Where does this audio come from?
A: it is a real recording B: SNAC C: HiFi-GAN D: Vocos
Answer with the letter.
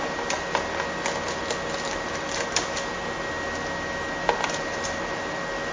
A